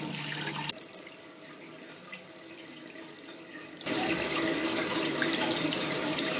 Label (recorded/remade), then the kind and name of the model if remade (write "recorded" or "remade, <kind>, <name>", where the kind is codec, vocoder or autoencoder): recorded